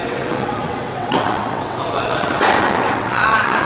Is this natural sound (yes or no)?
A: no